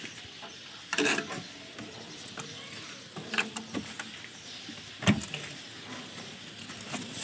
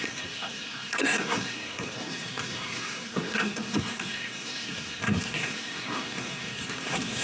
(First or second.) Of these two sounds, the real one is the first